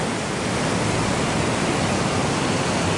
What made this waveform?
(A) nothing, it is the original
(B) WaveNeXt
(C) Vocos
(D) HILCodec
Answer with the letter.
A